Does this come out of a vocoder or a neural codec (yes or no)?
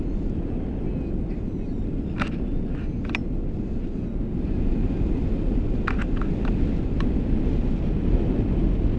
no